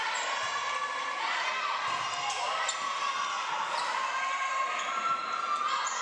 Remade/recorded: recorded